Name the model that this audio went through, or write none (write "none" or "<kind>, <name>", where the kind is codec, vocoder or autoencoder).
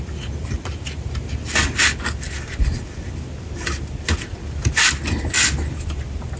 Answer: none